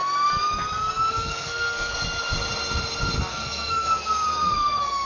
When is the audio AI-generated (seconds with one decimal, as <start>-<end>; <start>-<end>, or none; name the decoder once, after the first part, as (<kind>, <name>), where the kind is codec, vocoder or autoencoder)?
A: 1.1-1.9 (codec, SNAC); 3.3-5.1